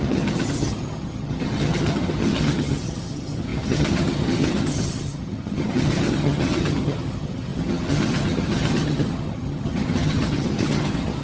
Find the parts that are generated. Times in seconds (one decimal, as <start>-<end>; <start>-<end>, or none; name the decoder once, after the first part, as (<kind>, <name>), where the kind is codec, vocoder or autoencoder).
0.0-11.2 (vocoder, HiFi-GAN)